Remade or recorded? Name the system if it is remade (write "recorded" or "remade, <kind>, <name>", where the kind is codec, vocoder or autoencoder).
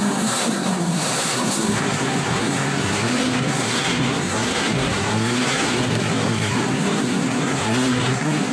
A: remade, codec, SNAC